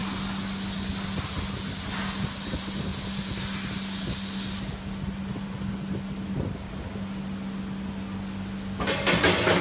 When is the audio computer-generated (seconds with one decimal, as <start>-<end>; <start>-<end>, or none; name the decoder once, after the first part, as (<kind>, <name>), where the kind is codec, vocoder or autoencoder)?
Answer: none